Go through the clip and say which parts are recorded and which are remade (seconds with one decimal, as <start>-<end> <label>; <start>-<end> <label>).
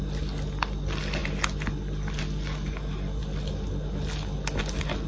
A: 0.0-5.1 recorded